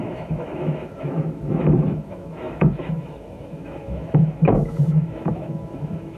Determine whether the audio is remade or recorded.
remade